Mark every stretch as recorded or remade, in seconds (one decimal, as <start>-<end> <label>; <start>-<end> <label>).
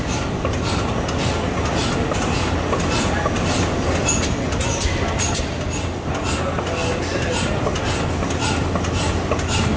0.0-9.8 recorded